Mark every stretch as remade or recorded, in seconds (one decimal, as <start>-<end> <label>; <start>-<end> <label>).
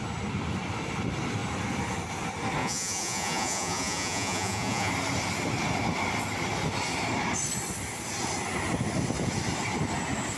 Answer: 0.0-2.6 recorded; 2.6-4.9 remade; 4.9-10.4 recorded